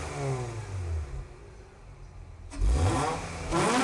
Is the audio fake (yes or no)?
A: no